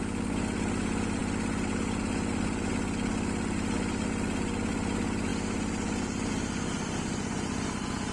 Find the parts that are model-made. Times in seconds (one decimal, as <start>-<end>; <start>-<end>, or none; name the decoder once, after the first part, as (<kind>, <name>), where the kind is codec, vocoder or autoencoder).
none

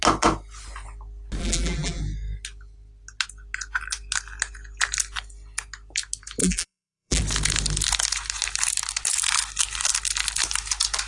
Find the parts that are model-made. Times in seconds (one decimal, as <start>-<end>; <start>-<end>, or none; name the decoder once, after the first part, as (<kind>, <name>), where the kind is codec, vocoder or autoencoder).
1.4-2.0 (vocoder, BigVGAN v2); 6.4-7.2

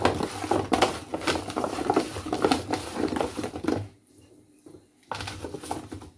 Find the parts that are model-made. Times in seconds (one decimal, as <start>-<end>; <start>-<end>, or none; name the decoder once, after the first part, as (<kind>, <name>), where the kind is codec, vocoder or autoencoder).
1.1-4.6 (vocoder, BigVGAN v2)

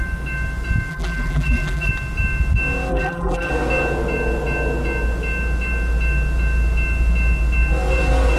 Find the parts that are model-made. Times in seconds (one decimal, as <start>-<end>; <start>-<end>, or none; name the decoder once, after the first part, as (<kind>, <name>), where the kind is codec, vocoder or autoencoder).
0.9-1.9 (vocoder, BigVGAN v2); 2.9-3.5

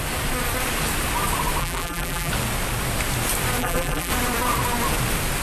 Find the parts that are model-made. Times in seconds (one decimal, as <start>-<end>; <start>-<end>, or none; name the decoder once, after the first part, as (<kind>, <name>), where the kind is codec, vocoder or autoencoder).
1.6-2.3 (vocoder, BigVGAN v2); 3.6-4.1

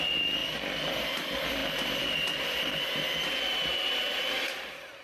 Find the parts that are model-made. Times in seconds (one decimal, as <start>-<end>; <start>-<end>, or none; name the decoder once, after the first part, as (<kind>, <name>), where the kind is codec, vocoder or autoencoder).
0.0-5.0 (vocoder, BigVGAN v2)

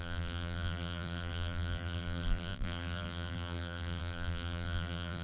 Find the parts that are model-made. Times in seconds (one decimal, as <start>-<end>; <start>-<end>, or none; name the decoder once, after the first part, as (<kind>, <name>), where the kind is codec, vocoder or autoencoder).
0.0-5.2 (vocoder, BigVGAN v2)